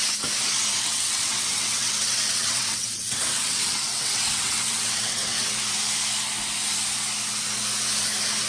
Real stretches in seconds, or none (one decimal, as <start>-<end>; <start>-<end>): 0.0-0.7; 5.5-8.5